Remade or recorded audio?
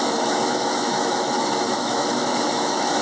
remade